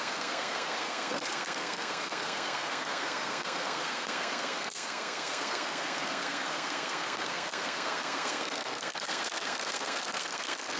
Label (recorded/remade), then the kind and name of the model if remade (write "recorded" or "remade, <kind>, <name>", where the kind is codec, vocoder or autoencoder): remade, codec, SNAC